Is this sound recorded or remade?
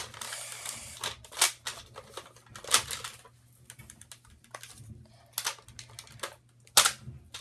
recorded